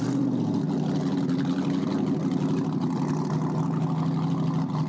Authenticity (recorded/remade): recorded